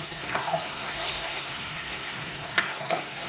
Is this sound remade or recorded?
remade